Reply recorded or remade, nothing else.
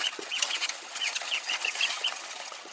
remade